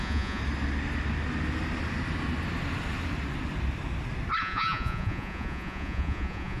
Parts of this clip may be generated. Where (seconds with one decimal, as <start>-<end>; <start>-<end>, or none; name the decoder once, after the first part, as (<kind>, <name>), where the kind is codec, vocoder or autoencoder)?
0.0-0.4 (vocoder, Vocos); 4.4-6.6